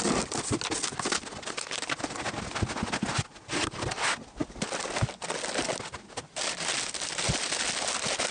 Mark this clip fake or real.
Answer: real